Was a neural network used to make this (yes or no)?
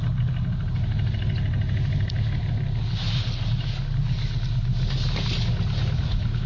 no